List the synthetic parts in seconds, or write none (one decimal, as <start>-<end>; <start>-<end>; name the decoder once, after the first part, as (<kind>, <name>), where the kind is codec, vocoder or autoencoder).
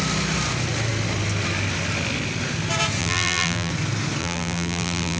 3.0-3.7 (vocoder, BigVGAN v2); 4.2-5.2